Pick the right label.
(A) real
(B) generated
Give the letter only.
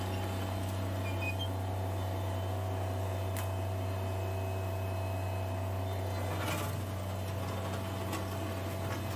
A